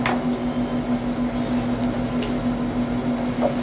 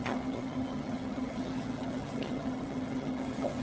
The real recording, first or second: first